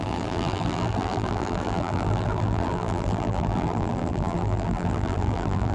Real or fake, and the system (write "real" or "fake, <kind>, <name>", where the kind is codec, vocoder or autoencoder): fake, vocoder, BigVGAN v2